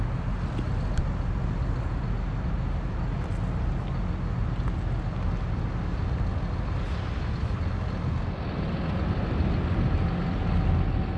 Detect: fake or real real